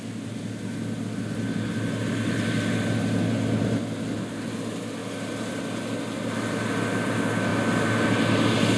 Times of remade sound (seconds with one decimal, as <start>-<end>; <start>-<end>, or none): none